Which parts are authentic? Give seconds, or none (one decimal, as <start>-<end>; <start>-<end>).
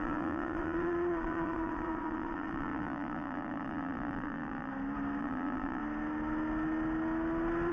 4.7-5.2; 5.8-7.7